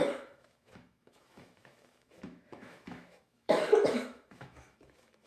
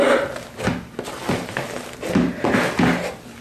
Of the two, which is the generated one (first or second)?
first